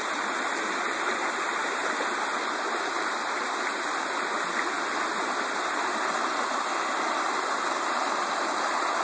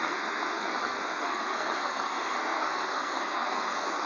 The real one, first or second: first